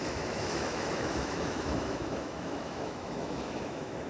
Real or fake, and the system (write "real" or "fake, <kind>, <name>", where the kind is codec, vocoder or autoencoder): fake, autoencoder, DAC-VAE